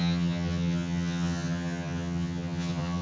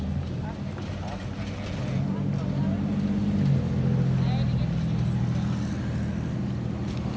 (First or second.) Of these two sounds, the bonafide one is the second